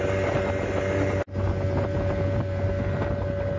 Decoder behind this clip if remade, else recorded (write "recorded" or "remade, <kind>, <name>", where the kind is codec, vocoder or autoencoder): recorded